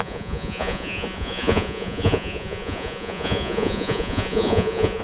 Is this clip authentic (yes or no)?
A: no